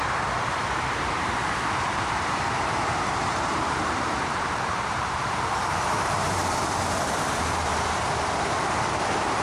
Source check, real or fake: fake